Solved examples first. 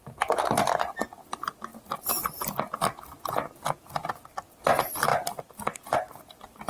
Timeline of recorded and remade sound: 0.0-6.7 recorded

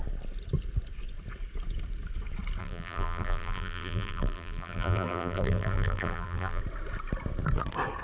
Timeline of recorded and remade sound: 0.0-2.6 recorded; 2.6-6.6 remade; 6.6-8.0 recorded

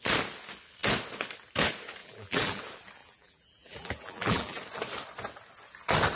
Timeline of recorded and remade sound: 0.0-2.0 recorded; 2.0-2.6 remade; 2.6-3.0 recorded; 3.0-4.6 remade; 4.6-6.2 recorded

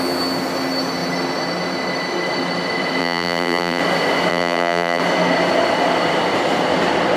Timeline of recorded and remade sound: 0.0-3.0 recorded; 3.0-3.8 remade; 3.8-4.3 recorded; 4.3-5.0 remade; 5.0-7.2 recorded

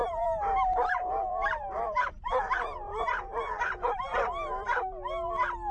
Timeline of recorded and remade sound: 0.0-3.4 remade; 3.4-5.7 recorded

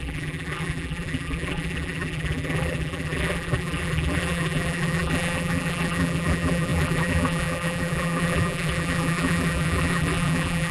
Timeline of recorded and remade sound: 0.0-10.7 remade

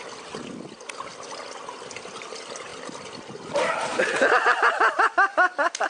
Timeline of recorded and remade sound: 0.0-5.9 recorded